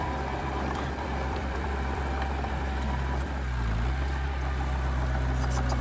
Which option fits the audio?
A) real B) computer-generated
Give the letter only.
B